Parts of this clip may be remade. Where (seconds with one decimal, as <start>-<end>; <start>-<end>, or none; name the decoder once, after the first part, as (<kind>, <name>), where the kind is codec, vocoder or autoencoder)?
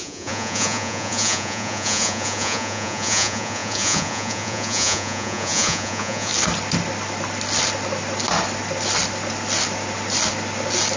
0.0-6.3 (vocoder, Vocos)